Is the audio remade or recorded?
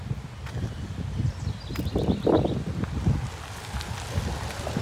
recorded